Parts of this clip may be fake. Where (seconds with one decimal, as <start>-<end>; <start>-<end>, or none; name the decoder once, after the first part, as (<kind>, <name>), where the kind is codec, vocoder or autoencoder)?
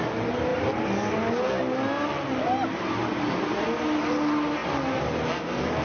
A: none